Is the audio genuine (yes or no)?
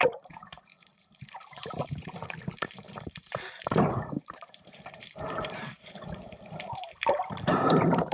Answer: no